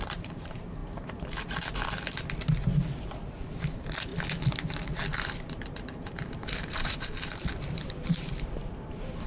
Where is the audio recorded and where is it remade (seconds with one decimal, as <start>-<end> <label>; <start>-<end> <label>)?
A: 0.0-0.8 remade; 0.8-3.0 recorded; 3.0-4.1 remade; 4.1-5.1 recorded; 5.1-9.3 remade